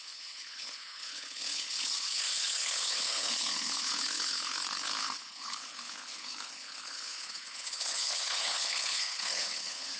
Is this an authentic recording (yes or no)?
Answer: no